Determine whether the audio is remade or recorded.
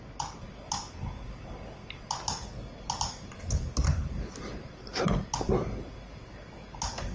recorded